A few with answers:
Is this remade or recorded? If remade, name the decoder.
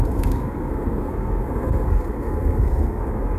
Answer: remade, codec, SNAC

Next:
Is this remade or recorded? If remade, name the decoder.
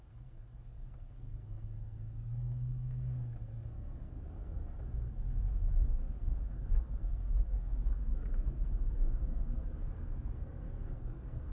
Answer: remade, codec, SNAC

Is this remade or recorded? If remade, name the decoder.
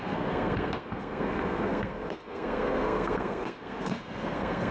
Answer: remade, codec, SNAC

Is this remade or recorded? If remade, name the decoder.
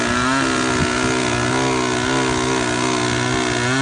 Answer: recorded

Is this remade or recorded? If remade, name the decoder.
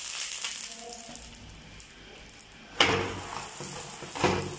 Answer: recorded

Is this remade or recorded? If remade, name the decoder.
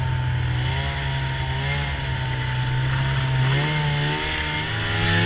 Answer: recorded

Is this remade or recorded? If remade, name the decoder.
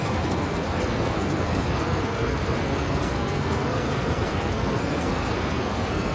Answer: remade, codec, SNAC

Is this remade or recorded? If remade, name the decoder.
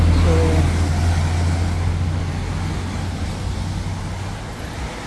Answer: recorded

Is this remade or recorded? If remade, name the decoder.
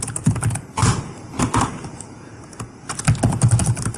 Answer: recorded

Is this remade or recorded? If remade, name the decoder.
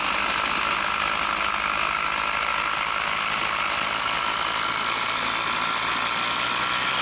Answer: recorded